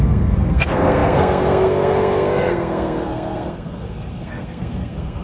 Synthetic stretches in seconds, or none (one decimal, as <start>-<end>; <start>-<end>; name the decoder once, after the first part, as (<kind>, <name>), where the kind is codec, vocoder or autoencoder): 0.0-5.2 (codec, SNAC)